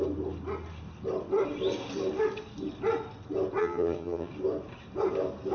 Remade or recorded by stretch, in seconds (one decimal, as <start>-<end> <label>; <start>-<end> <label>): 0.0-3.6 recorded; 3.6-4.3 remade; 4.3-5.5 recorded